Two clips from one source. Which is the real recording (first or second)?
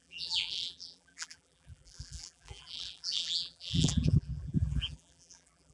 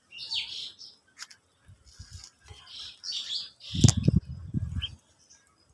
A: second